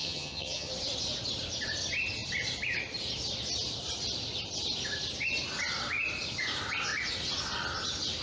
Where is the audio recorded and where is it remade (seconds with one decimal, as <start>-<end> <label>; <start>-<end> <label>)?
0.0-0.7 remade; 0.7-8.2 recorded

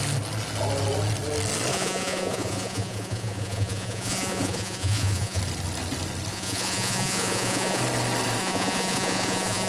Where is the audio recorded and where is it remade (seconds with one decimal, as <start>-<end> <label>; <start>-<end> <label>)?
0.0-1.7 recorded; 1.7-5.4 remade; 5.4-6.3 recorded; 6.3-7.8 remade; 7.8-8.4 recorded; 8.4-9.7 remade

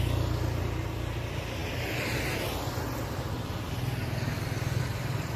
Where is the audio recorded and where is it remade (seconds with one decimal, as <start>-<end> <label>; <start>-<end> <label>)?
0.0-5.4 recorded

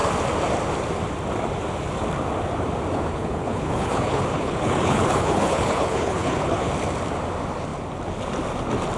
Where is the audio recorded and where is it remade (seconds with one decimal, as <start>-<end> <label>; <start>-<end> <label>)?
0.0-3.1 recorded; 3.1-6.7 remade; 6.7-9.0 recorded

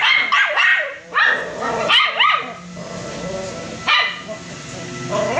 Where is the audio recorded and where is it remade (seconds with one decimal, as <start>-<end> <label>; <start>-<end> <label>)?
0.0-5.4 recorded